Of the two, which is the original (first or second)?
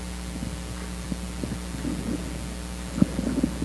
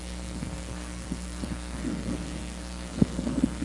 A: first